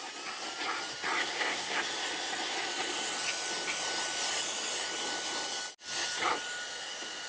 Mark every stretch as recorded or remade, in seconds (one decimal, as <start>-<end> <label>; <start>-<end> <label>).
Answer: 0.0-1.2 recorded; 1.2-1.8 remade; 1.8-7.3 recorded